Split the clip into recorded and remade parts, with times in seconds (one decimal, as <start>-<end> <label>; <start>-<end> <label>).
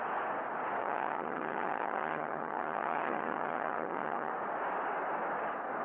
0.0-0.8 recorded; 0.8-4.3 remade; 4.3-5.8 recorded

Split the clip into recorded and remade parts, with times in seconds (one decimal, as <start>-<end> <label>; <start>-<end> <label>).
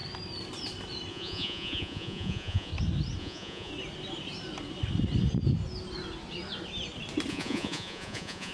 0.0-1.1 recorded; 1.1-2.7 remade; 2.7-3.2 recorded; 3.2-3.7 remade; 3.7-7.3 recorded; 7.3-8.5 remade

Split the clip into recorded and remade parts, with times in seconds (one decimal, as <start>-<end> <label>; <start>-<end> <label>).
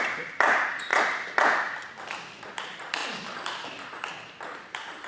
0.0-0.9 remade; 0.9-2.4 recorded; 2.4-3.0 remade; 3.0-4.1 recorded; 4.1-5.1 remade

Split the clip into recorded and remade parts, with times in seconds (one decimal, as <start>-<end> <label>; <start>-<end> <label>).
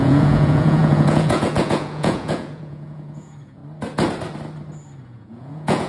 0.0-3.6 remade; 3.6-5.0 recorded; 5.0-5.9 remade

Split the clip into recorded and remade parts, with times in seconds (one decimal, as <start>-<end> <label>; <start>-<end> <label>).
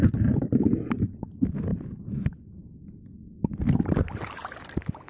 0.0-5.1 recorded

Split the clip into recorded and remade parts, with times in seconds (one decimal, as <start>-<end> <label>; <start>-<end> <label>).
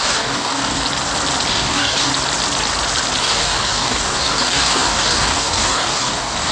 0.0-0.8 remade; 0.8-1.5 recorded; 1.5-2.1 remade; 2.1-3.2 recorded; 3.2-6.5 remade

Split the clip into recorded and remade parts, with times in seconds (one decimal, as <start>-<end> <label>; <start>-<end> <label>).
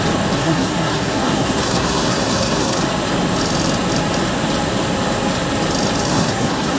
0.0-0.4 recorded; 0.4-2.8 remade; 2.8-6.1 recorded; 6.1-6.8 remade